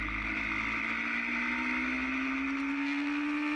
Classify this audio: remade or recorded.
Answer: recorded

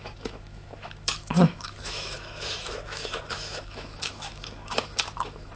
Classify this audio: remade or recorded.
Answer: remade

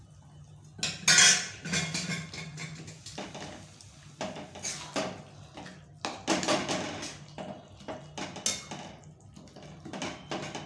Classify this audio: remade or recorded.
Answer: recorded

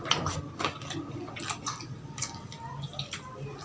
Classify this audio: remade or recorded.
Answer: recorded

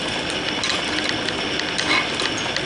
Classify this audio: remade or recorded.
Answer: recorded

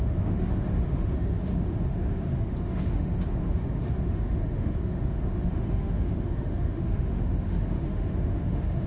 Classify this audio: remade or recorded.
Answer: remade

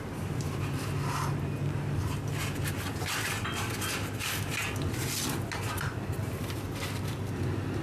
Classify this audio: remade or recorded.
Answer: recorded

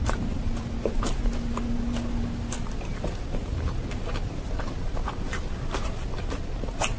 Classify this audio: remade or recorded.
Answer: recorded